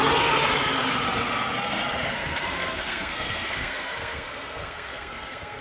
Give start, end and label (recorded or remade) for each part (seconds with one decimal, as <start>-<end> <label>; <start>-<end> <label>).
0.0-2.2 recorded; 2.2-5.6 remade